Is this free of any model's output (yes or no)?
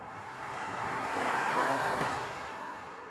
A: no